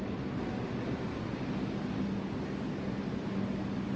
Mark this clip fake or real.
real